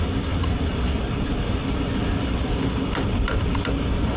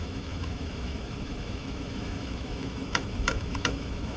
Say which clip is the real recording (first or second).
first